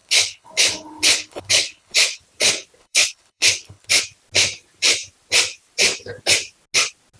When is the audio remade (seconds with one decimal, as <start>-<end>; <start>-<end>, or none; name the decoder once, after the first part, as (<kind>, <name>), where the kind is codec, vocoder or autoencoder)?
0.0-2.2 (codec, HILCodec); 2.8-4.0